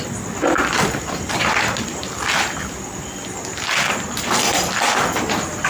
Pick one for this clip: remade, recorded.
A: recorded